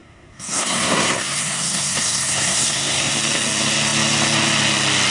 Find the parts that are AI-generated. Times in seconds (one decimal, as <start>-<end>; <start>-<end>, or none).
0.0-3.1